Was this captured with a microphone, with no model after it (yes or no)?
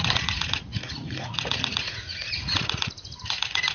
no